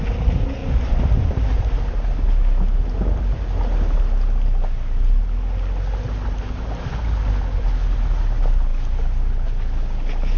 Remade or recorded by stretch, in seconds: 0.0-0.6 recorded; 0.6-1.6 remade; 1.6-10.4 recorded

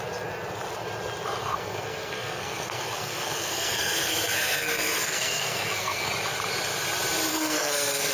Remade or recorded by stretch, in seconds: 0.0-1.4 recorded; 1.4-6.1 remade; 6.1-7.3 recorded; 7.3-8.1 remade

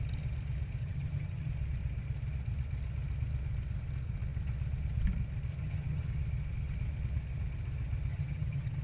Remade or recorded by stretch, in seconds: 0.0-0.8 recorded; 0.8-1.5 remade; 1.5-5.5 recorded; 5.5-6.1 remade; 6.1-8.1 recorded; 8.1-8.8 remade

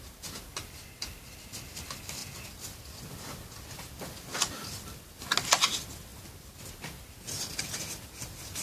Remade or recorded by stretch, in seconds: 0.0-8.6 recorded

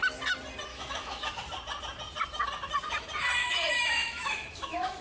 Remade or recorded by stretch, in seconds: 0.0-0.7 recorded; 0.7-1.3 remade; 1.3-3.4 recorded; 3.4-5.0 remade

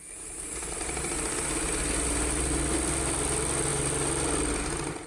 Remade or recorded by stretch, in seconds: 0.0-5.1 recorded

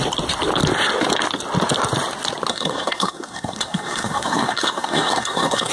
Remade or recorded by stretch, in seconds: 0.0-2.5 recorded; 2.5-5.7 remade

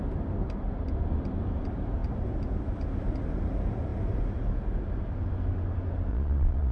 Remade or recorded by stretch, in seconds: 0.0-6.1 recorded; 6.1-6.7 remade